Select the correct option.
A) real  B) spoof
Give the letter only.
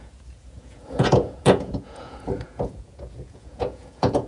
B